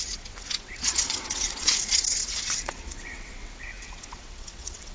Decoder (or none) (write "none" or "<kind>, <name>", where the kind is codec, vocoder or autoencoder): vocoder, WaveNeXt